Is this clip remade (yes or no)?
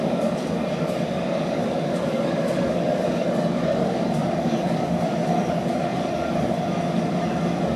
yes